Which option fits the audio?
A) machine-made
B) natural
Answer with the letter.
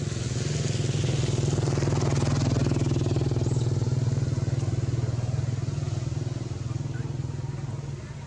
B